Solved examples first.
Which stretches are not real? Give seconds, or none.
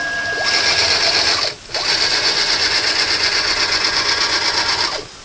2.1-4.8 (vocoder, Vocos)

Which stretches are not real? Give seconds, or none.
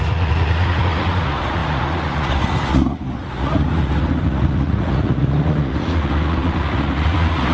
0.0-7.5 (vocoder, Vocos)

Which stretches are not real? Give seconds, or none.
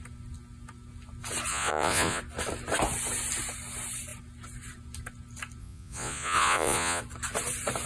1.5-2.2 (vocoder, Vocos); 5.6-7.0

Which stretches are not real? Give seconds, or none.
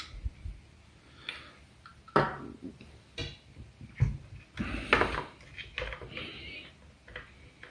none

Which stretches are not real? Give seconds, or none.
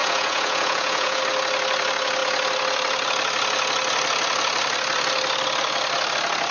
0.0-1.2 (vocoder, Vocos)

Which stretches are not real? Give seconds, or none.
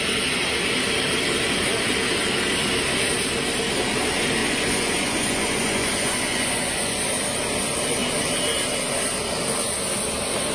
4.4-7.1 (vocoder, Vocos)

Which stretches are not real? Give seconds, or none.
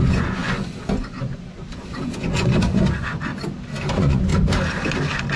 0.0-3.3 (vocoder, Vocos); 3.9-4.3